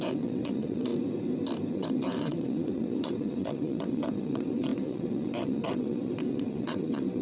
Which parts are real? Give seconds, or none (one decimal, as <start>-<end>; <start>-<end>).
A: 0.9-1.7